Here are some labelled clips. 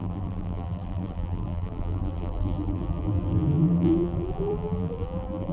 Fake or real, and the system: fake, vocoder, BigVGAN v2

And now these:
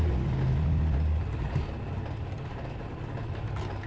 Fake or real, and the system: real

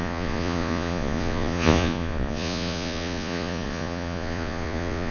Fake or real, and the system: fake, vocoder, Vocos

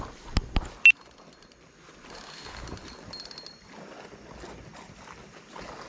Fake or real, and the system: real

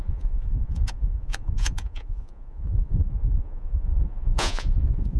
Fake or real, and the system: fake, vocoder, Vocos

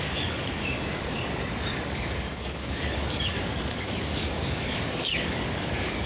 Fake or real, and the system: fake, codec, DAC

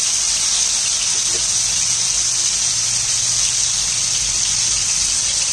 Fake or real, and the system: real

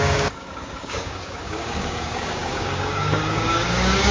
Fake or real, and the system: fake, codec, DAC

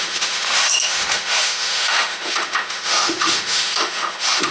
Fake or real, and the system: fake, autoencoder, DAC-VAE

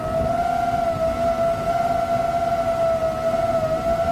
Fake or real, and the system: real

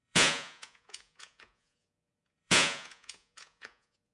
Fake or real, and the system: fake, vocoder, Vocos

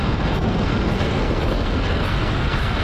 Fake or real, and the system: fake, codec, SNAC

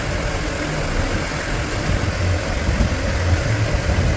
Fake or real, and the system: real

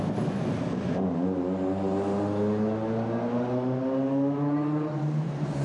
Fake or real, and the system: real